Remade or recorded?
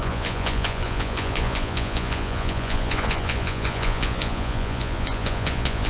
remade